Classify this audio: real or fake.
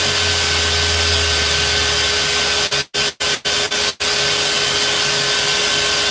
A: real